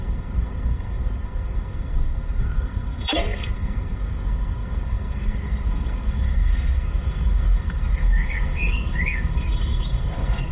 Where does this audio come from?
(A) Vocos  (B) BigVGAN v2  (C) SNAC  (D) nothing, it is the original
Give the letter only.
C